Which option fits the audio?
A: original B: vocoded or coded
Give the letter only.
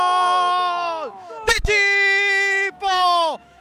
B